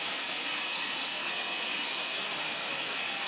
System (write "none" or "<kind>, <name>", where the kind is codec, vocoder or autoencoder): codec, SNAC